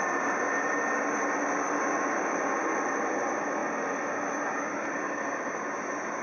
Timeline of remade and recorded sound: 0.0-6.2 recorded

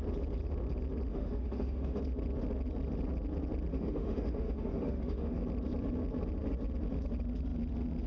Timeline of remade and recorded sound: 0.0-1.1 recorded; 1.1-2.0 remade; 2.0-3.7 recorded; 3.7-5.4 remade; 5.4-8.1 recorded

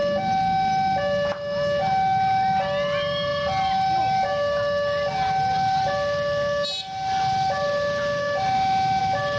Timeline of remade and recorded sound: 0.0-8.2 recorded; 8.2-9.0 remade; 9.0-9.4 recorded

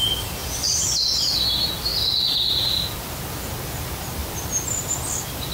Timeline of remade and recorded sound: 0.0-0.4 recorded; 0.4-0.9 remade; 0.9-5.5 recorded

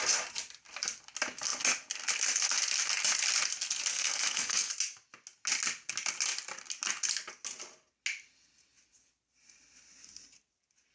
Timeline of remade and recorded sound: 0.0-3.9 recorded; 3.9-4.7 remade; 4.7-10.9 recorded

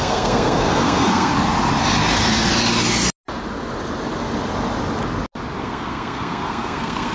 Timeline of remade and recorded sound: 0.0-1.3 remade; 1.3-5.6 recorded; 5.6-7.1 remade

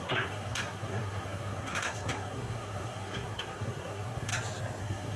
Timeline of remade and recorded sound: 0.0-4.3 remade; 4.3-4.8 recorded; 4.8-5.2 remade